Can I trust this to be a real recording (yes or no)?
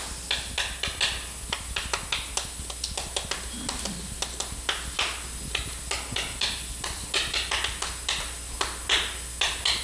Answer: yes